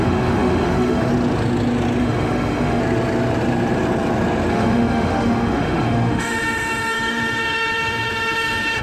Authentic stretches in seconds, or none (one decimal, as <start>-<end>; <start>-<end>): 1.1-2.0; 2.8-4.5